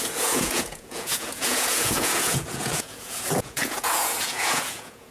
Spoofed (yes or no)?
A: yes